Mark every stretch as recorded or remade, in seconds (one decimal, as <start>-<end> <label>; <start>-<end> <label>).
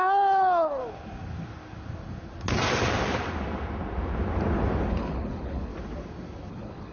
0.0-0.8 remade; 0.8-4.9 recorded; 4.9-5.7 remade; 5.7-6.5 recorded; 6.5-6.9 remade